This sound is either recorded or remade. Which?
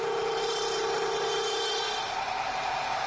remade